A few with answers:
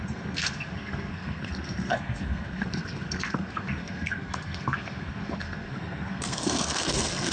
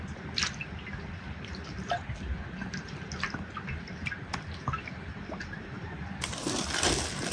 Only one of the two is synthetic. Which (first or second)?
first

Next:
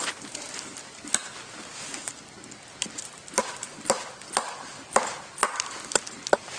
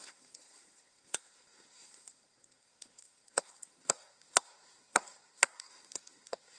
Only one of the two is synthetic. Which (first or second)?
second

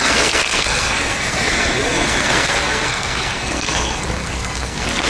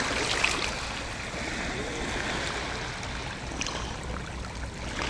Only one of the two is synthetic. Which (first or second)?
first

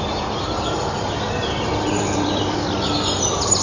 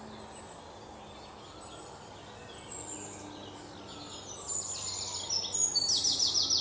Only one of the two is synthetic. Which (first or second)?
first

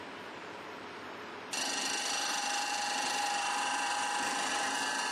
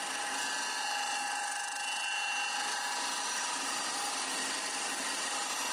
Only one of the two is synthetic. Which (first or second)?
first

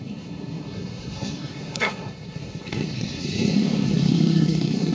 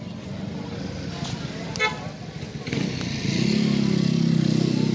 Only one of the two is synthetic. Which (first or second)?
first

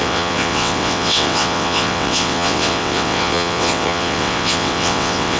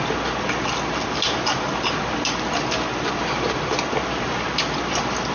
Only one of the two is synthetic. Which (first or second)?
first